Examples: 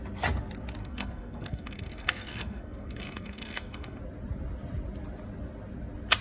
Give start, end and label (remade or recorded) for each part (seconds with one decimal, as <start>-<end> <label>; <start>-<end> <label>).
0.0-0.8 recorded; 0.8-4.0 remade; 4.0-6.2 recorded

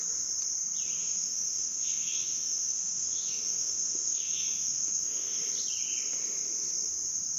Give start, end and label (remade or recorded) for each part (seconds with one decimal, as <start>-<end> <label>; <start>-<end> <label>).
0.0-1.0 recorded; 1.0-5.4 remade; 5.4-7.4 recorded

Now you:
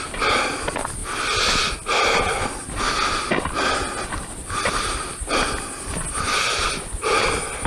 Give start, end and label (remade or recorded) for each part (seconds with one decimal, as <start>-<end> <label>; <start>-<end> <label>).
0.0-7.7 recorded

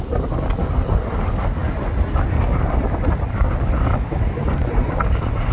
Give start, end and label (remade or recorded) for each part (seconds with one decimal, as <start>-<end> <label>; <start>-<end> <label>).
0.0-5.5 recorded

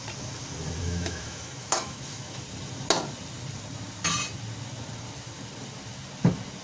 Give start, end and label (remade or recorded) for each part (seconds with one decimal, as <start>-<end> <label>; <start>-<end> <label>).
0.0-0.8 recorded; 0.8-2.4 remade; 2.4-6.6 recorded

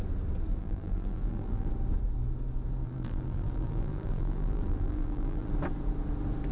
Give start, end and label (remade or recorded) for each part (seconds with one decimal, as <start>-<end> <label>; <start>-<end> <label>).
0.0-0.5 recorded; 0.5-1.7 remade; 1.7-2.8 recorded; 2.8-5.5 remade; 5.5-6.5 recorded

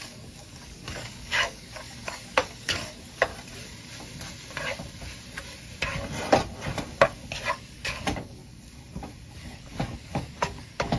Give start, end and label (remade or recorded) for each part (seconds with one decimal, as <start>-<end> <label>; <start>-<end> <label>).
0.0-3.3 remade; 3.3-7.5 recorded; 7.5-8.4 remade; 8.4-9.3 recorded; 9.3-11.0 remade

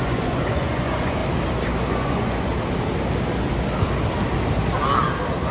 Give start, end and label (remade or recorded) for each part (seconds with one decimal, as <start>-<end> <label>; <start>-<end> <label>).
0.0-1.2 remade; 1.2-1.9 recorded; 1.9-2.5 remade; 2.5-5.5 recorded